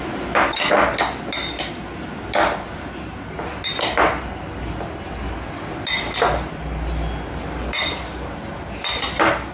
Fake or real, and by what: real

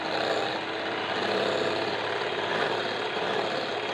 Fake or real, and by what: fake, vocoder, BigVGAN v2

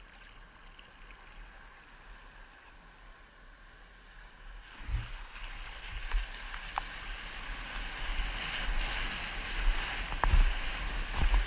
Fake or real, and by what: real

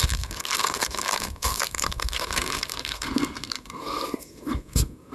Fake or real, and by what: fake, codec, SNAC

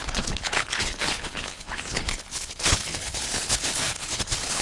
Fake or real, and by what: fake, codec, HILCodec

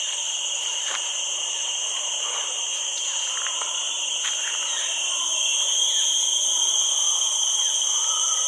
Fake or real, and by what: fake, vocoder, BigVGAN v2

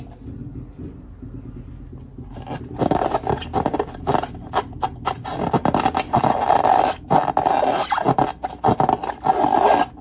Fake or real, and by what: real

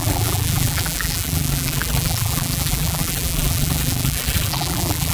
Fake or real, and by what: fake, vocoder, BigVGAN v2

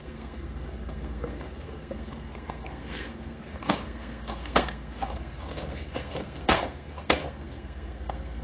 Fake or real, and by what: fake, codec, SNAC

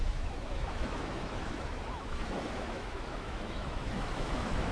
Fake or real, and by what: fake, autoencoder, DAC-VAE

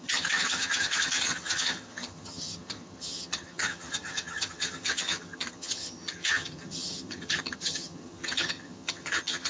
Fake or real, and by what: fake, vocoder, HiFi-GAN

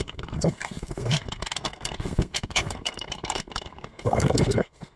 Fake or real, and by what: fake, codec, SNAC